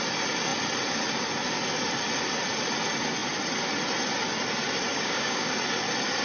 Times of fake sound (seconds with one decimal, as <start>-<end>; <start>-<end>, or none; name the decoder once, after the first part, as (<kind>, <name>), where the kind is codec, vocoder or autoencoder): 4.9-5.5 (codec, DAC)